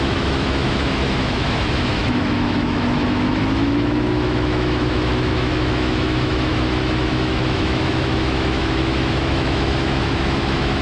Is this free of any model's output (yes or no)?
no